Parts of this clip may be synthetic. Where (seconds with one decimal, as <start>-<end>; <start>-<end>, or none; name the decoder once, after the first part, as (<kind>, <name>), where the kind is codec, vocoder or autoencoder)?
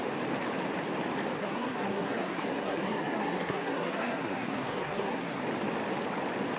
1.4-5.4 (codec, SNAC)